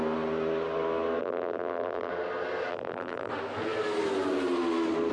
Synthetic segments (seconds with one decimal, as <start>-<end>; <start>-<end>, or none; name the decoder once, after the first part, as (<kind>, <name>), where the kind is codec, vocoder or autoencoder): 1.2-2.1 (vocoder, BigVGAN v2); 2.7-3.3